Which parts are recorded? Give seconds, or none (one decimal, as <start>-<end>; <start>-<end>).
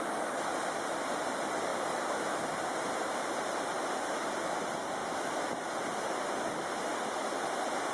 0.0-7.9